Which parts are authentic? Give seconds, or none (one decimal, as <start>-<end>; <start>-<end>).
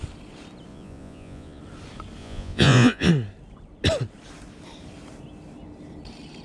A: 0.0-0.7; 1.6-2.2; 3.1-6.4